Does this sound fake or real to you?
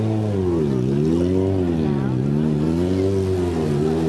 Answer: real